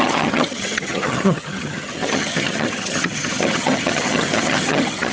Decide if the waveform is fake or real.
fake